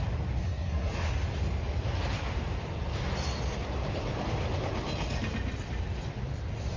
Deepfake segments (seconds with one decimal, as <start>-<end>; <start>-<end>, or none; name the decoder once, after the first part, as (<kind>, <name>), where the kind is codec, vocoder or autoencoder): 0.4-0.9 (codec, SNAC)